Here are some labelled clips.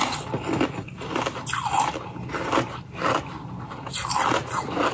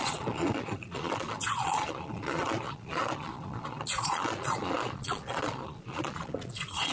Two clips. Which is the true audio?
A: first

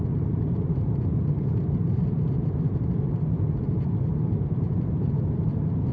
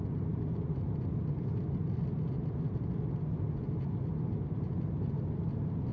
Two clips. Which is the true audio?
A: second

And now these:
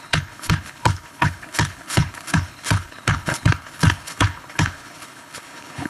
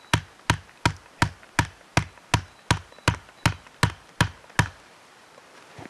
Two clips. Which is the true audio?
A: second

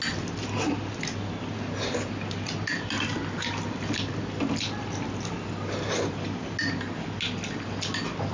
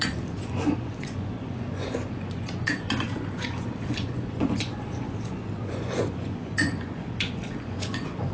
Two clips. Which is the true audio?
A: first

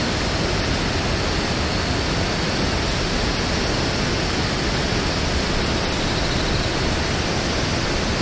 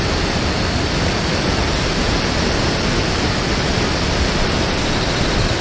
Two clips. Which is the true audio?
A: first